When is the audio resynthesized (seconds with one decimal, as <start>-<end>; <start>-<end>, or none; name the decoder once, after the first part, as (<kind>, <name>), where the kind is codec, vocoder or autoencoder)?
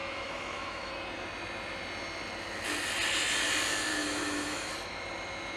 0.0-0.9 (autoencoder, DAC-VAE); 3.9-4.7